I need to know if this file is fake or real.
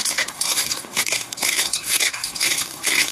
fake